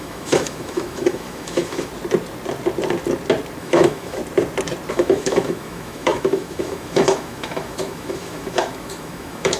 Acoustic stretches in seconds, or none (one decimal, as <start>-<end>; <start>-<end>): 1.9-3.6; 4.2-4.9